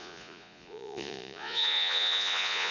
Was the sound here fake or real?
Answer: fake